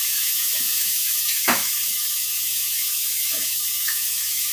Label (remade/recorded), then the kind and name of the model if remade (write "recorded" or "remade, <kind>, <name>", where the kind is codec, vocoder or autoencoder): remade, autoencoder, DAC-VAE